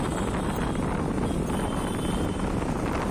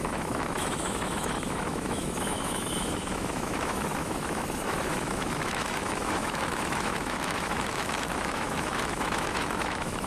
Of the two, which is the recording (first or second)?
first